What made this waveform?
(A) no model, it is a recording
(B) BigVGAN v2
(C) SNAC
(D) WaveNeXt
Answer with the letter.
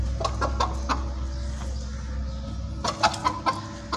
A